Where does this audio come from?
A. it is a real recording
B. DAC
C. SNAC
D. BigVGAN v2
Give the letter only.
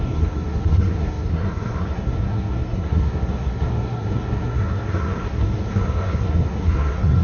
C